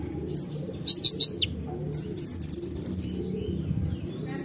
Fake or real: real